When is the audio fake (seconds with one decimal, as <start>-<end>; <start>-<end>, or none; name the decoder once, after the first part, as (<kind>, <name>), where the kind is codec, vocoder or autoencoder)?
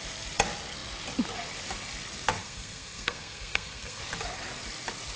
2.4-4.0 (codec, SNAC)